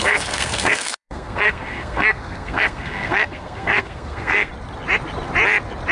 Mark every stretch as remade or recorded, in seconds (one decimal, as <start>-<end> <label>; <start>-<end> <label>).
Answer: 0.0-4.5 remade; 4.5-5.9 recorded